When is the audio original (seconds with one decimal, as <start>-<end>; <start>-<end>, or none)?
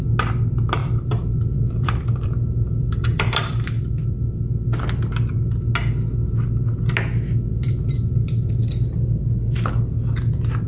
0.0-0.8; 4.3-7.5; 8.6-10.7